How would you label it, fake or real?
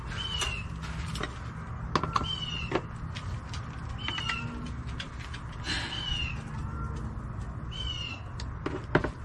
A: real